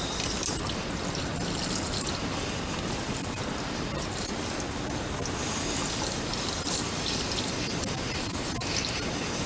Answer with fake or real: real